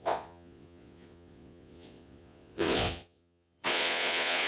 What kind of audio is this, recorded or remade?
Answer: remade